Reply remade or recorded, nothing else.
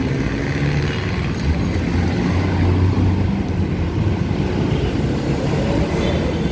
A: recorded